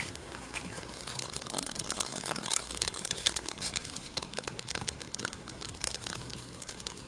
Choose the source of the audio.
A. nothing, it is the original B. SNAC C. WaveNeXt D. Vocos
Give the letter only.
B